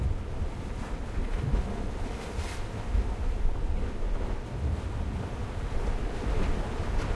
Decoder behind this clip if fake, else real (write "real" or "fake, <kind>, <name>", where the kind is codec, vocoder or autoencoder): real